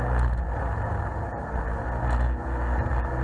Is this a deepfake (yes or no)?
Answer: no